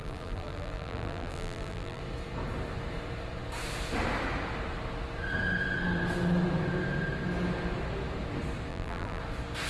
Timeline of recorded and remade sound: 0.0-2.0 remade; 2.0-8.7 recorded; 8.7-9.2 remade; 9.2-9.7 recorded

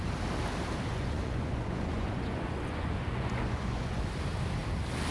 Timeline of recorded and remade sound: 0.0-0.9 recorded; 0.9-4.0 remade; 4.0-5.1 recorded

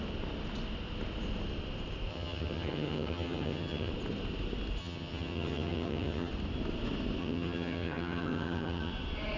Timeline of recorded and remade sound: 0.0-2.1 recorded; 2.1-3.9 remade; 3.9-4.8 recorded; 4.8-6.3 remade; 6.3-7.2 recorded; 7.2-8.9 remade; 8.9-9.4 recorded

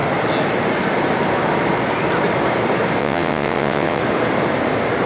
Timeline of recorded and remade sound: 0.0-3.0 recorded; 3.0-4.0 remade; 4.0-5.1 recorded